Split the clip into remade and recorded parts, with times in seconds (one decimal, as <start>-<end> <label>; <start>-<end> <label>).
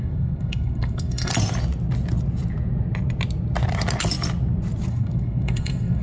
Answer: 0.0-1.3 remade; 1.3-4.9 recorded; 4.9-6.0 remade